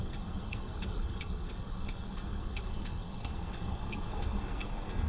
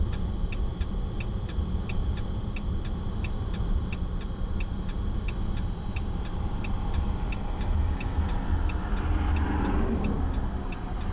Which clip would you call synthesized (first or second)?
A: first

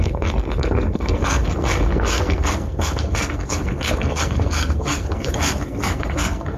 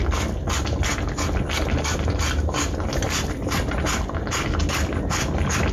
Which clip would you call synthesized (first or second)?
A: first